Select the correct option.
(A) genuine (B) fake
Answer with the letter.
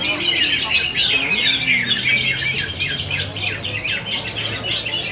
A